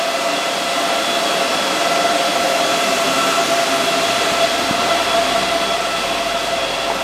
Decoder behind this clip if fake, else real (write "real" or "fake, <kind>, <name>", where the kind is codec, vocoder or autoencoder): real